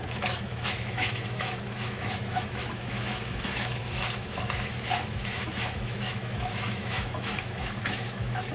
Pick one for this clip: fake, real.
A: fake